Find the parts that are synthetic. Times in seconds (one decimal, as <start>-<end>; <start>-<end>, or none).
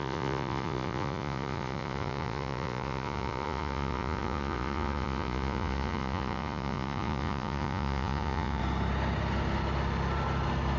0.0-8.6